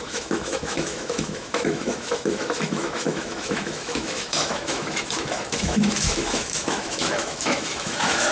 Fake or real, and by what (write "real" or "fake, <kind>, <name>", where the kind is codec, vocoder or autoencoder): fake, autoencoder, DAC-VAE